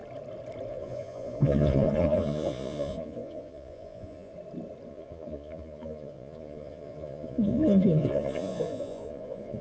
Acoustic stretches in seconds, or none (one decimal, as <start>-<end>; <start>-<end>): 0.0-0.7; 4.3-4.9